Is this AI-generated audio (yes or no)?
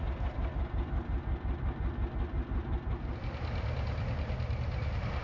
no